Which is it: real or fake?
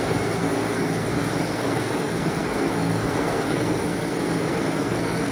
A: fake